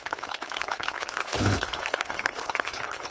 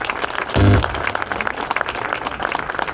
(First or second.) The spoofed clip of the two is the first